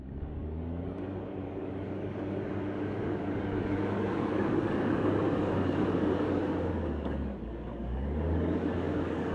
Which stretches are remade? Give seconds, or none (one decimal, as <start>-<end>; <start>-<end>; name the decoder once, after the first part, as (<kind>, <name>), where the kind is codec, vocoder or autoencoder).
0.0-9.3 (codec, DAC)

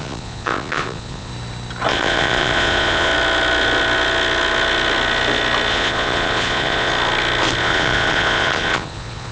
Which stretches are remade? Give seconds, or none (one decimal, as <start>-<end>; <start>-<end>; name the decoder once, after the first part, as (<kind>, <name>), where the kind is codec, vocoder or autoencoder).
0.0-1.3 (vocoder, Vocos); 1.9-3.1; 5.7-6.9; 7.6-9.3

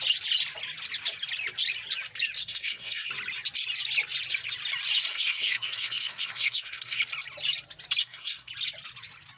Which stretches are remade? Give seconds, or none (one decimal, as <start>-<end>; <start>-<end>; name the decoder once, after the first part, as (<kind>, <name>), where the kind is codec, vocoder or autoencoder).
2.4-3.1 (codec, SNAC); 5.1-7.0; 8.0-8.5

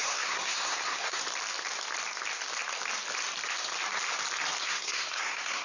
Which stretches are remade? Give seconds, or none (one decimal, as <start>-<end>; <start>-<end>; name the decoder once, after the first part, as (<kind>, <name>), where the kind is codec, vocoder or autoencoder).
0.0-1.2 (codec, SNAC); 4.6-5.6

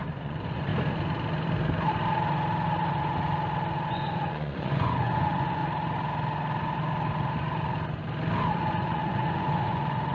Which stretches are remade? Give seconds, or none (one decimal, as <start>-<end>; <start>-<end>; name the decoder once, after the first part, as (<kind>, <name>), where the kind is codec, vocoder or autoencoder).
0.0-0.7 (vocoder, Vocos); 3.9-5.6; 8.5-10.1

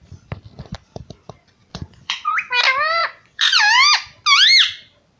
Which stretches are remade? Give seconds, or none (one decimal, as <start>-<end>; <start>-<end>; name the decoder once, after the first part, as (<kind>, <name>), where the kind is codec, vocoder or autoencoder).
1.7-2.3 (vocoder, Vocos); 3.0-3.6

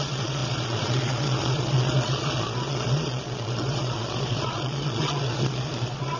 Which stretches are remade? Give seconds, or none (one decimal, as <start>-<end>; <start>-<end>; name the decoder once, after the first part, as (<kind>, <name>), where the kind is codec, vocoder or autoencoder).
0.0-6.2 (vocoder, Vocos)